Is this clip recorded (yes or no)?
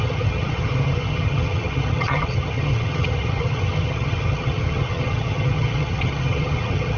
no